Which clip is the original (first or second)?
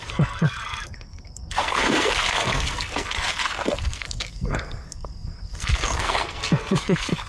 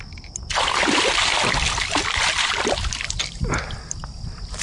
second